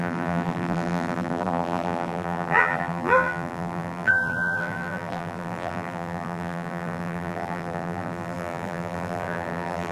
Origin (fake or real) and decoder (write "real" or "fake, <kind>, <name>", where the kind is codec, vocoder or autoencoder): fake, vocoder, BigVGAN v2